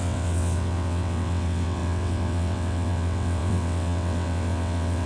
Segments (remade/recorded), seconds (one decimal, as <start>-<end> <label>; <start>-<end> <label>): 0.0-5.1 remade